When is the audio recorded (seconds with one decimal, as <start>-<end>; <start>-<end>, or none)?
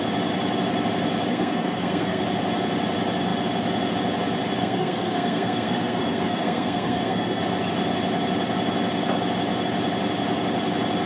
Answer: 0.0-1.3; 2.2-4.6; 7.4-11.1